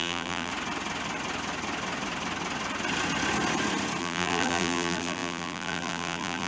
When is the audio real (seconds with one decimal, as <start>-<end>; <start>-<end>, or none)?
0.5-4.0